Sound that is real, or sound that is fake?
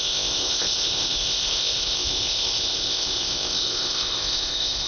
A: fake